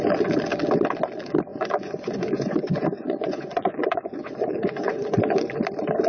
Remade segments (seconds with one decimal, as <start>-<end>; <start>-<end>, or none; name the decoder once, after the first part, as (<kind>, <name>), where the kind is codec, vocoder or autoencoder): 1.5-5.2 (vocoder, Vocos)